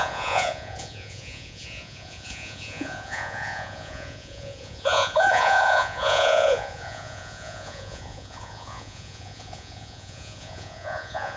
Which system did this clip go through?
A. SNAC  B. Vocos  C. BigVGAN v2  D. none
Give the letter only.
B